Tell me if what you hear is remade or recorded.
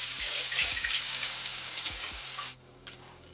remade